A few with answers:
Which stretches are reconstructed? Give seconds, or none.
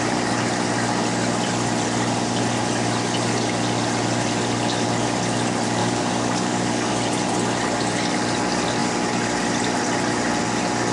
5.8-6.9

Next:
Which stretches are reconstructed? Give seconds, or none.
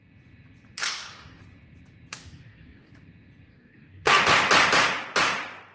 0.8-1.4; 2.1-2.9; 3.5-4.2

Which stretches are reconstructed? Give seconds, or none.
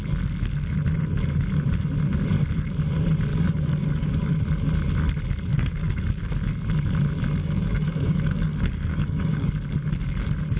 3.3-4.4; 5.5-6.3; 7.4-9.5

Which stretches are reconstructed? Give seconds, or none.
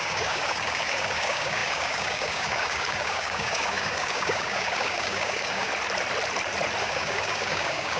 0.0-5.7; 6.8-8.0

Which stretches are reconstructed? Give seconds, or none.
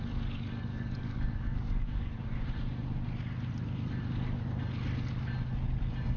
0.7-2.1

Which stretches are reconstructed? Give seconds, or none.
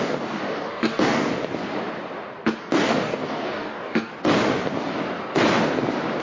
0.0-1.3; 2.6-4.1